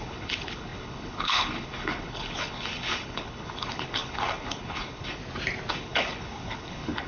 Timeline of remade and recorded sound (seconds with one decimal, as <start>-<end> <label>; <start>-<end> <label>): 0.0-5.2 remade; 5.2-5.7 recorded; 5.7-7.1 remade